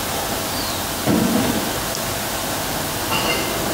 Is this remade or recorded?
recorded